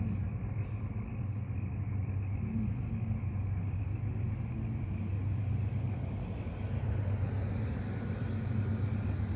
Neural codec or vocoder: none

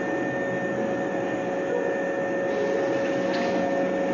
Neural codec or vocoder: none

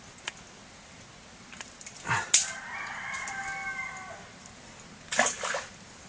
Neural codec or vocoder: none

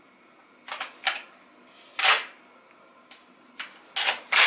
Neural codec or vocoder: none